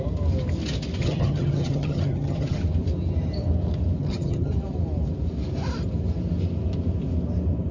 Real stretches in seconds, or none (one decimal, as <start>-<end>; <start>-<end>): 0.0-1.0; 2.6-4.0; 4.5-7.7